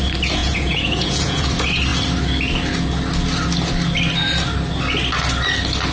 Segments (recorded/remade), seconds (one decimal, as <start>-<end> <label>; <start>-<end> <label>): 0.0-0.4 recorded; 0.4-1.5 remade; 1.5-5.9 recorded